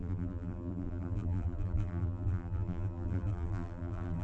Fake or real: fake